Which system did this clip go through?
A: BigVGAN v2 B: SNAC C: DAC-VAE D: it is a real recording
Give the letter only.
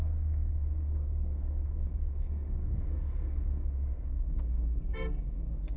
B